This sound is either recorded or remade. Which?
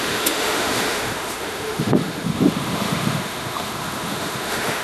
remade